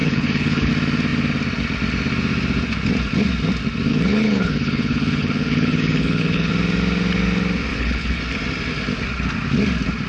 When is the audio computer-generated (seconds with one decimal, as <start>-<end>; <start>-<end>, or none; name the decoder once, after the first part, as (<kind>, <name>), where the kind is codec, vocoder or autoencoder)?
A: 0.0-0.7 (codec, HILCodec); 3.9-6.5; 7.7-8.2